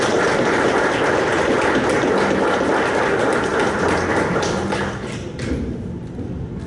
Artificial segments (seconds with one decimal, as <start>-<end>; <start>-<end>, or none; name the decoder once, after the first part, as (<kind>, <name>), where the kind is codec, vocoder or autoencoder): none